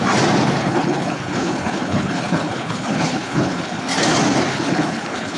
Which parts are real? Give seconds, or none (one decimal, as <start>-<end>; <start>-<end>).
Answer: 0.0-0.6; 3.8-4.5